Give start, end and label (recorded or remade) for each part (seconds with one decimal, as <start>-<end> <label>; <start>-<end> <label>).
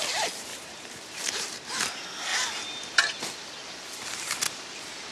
0.0-0.5 recorded; 0.5-1.7 remade; 1.7-5.1 recorded